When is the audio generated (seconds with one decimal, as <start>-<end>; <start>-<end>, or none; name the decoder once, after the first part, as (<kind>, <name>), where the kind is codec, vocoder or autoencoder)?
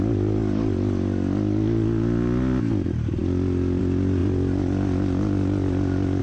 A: none